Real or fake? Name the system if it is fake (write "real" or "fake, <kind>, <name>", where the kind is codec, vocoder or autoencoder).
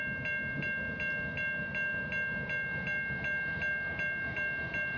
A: real